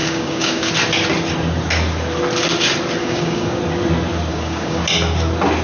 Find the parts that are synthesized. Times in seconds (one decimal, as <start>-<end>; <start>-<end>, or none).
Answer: 0.0-0.7; 3.0-3.6; 4.3-4.8